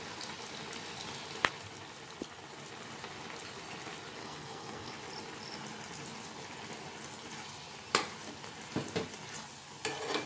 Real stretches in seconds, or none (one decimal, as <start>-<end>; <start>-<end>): 0.0-4.2; 4.9-10.3